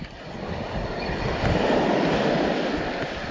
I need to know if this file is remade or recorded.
recorded